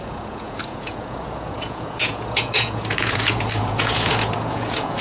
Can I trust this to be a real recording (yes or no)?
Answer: no